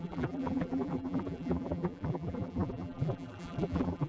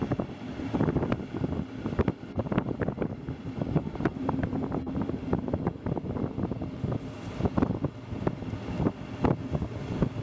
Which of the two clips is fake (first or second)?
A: first